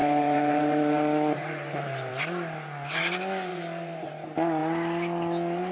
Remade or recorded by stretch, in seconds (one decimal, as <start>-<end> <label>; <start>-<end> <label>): 0.0-2.1 remade; 2.1-3.5 recorded; 3.5-4.1 remade; 4.1-5.7 recorded